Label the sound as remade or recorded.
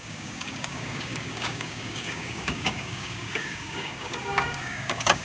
remade